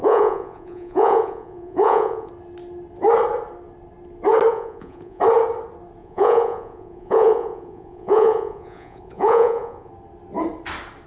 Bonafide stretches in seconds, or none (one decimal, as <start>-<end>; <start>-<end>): 2.3-4.5; 5.2-6.0; 9.9-11.1

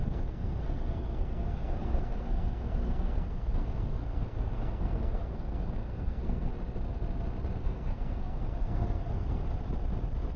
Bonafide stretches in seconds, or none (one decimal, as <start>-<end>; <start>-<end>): 6.5-7.6; 9.4-10.4

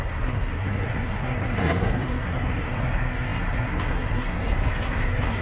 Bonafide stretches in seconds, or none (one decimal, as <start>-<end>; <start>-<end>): none

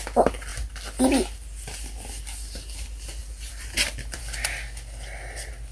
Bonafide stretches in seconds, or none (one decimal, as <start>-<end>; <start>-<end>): 0.0-3.2; 4.2-5.7

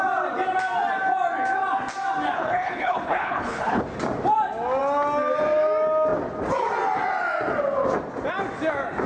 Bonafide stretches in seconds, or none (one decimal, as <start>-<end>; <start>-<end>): 0.0-2.4; 3.8-9.1